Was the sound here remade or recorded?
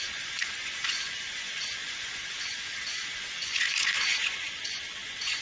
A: remade